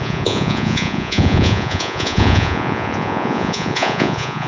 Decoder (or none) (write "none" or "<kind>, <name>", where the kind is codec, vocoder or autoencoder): vocoder, Vocos